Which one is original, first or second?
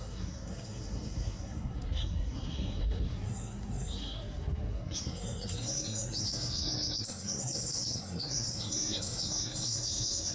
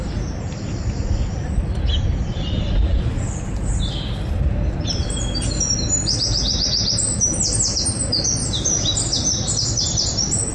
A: second